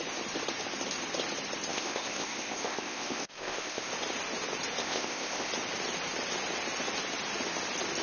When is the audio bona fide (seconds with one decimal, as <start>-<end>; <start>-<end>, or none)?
0.0-1.7; 3.9-4.8; 5.5-8.0